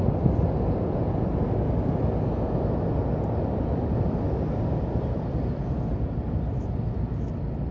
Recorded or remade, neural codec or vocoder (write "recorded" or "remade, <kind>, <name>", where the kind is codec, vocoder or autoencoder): recorded